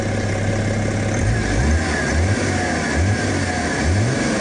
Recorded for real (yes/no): yes